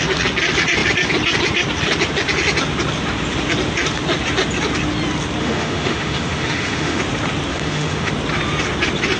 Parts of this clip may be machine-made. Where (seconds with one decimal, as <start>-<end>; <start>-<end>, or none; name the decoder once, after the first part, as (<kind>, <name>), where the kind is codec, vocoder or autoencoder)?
5.4-7.0 (autoencoder, DAC-VAE); 7.5-8.1